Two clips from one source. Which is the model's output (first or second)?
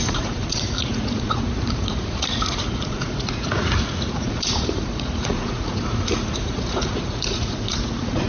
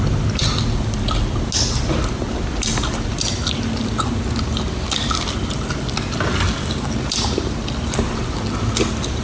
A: first